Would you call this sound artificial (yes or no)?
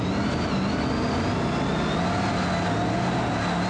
no